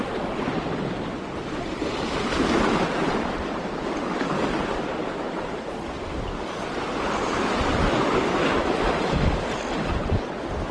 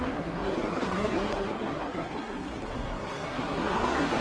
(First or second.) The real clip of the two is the first